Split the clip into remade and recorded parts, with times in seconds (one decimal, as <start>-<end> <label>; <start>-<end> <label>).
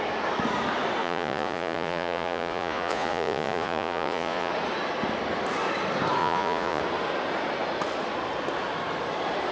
0.0-1.0 recorded; 1.0-4.5 remade; 4.5-6.2 recorded; 6.2-6.8 remade; 6.8-9.5 recorded